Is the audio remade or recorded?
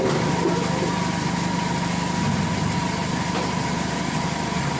recorded